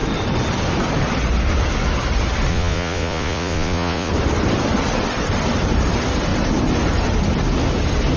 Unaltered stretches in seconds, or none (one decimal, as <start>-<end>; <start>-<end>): 0.0-2.5; 4.1-8.2